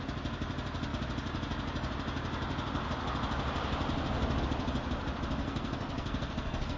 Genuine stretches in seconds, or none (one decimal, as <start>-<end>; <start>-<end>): 0.0-5.4